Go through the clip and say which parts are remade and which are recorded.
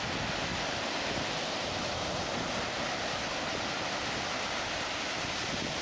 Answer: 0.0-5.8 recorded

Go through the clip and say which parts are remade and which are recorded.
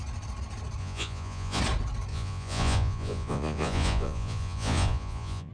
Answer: 0.0-0.8 recorded; 0.8-1.6 remade; 1.6-2.1 recorded; 2.1-5.5 remade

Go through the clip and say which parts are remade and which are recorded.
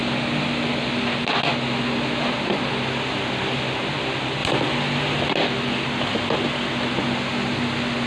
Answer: 0.0-8.1 recorded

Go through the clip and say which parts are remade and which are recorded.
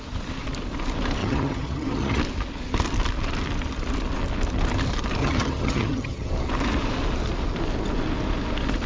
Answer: 0.0-1.2 recorded; 1.2-2.2 remade; 2.2-5.2 recorded; 5.2-6.3 remade; 6.3-8.9 recorded